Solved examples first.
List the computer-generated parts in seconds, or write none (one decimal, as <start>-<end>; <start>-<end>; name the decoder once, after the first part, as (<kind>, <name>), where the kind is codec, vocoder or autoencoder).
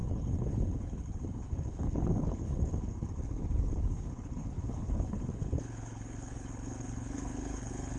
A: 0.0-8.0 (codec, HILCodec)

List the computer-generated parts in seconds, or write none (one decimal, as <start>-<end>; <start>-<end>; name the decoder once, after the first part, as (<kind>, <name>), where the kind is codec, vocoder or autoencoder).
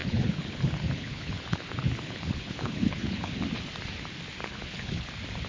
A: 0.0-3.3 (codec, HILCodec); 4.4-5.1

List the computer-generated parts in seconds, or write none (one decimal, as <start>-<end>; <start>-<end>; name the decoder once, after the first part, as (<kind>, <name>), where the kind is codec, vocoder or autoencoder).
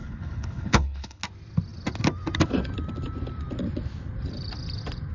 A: 0.0-1.2 (codec, HILCodec)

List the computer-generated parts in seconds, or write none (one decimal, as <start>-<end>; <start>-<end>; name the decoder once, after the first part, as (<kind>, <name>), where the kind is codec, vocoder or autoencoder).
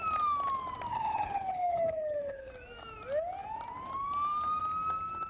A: 0.9-2.5 (codec, HILCodec)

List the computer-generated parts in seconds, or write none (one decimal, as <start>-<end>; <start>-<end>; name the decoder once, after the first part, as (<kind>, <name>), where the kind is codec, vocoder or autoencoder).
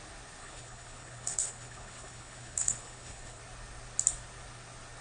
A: 0.4-3.4 (codec, HILCodec)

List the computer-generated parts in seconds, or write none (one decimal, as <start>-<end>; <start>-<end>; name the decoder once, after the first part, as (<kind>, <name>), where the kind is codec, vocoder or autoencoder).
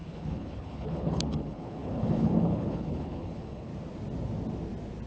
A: 0.0-3.7 (codec, HILCodec)